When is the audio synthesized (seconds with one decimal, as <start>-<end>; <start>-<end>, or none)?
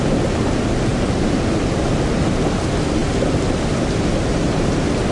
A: none